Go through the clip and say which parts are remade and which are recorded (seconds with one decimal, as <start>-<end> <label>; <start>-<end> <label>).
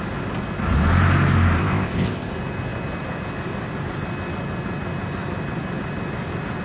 0.0-1.6 recorded; 1.6-2.3 remade; 2.3-6.6 recorded